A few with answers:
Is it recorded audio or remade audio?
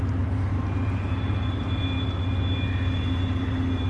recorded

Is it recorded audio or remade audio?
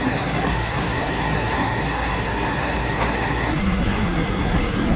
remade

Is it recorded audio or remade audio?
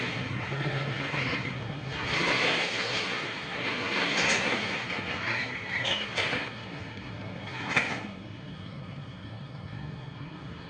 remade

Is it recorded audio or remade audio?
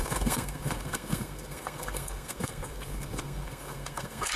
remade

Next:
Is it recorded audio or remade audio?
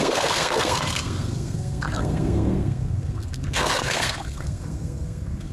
remade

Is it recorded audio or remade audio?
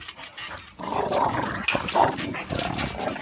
recorded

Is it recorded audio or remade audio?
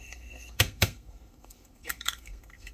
remade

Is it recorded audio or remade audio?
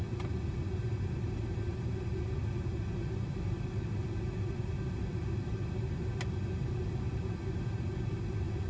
recorded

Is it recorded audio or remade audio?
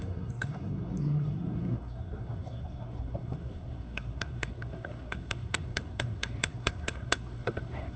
remade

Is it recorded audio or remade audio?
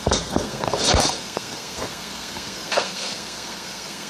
remade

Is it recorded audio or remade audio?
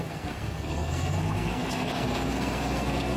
remade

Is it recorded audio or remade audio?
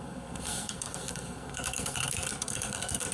remade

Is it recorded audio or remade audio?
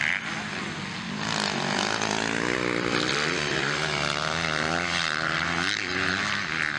recorded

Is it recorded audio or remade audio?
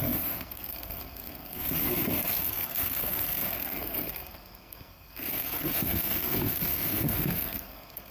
remade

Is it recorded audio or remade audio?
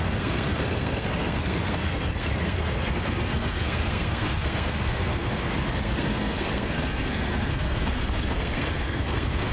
remade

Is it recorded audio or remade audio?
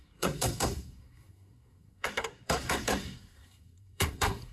remade